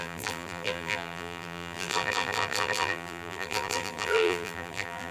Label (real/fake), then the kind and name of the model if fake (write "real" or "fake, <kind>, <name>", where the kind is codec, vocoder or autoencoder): fake, vocoder, BigVGAN v2